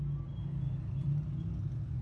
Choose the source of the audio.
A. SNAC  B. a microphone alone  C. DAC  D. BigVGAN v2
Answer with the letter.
B